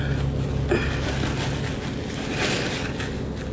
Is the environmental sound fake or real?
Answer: real